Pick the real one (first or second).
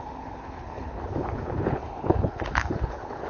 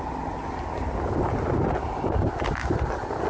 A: second